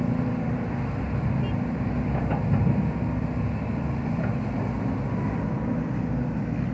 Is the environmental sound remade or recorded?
recorded